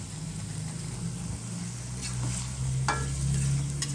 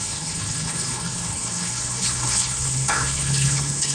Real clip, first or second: first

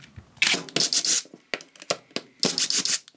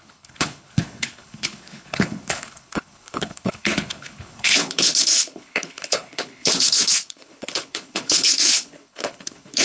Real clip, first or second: first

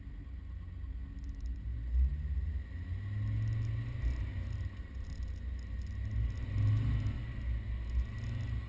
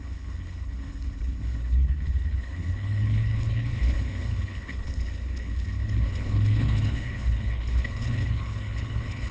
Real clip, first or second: first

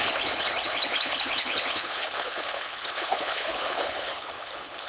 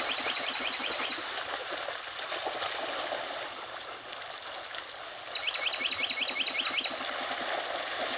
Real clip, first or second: second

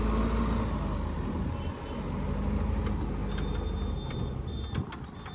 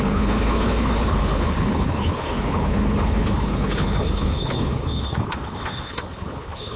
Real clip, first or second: first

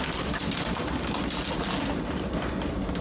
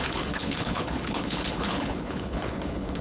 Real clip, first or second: first